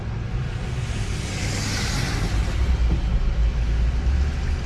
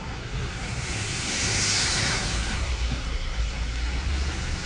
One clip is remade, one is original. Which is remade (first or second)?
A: second